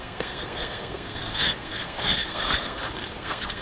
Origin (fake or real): fake